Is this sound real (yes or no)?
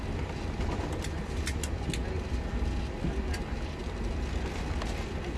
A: yes